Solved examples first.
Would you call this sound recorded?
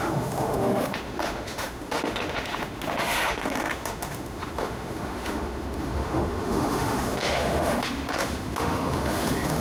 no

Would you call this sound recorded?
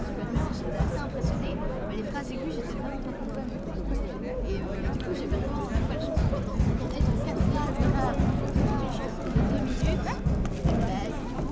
yes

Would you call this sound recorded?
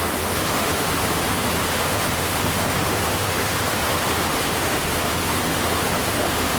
no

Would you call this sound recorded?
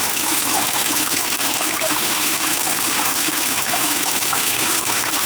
no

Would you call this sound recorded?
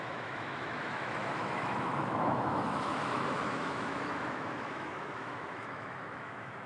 no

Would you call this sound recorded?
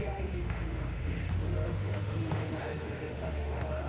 no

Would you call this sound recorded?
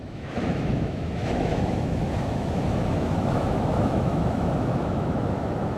no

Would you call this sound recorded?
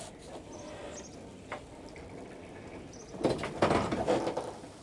yes